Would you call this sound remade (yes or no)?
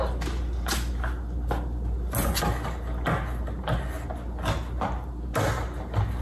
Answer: no